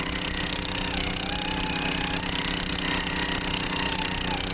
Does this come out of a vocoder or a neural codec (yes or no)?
no